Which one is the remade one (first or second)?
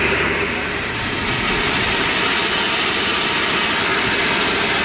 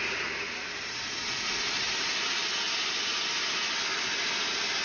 first